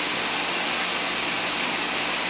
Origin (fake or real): real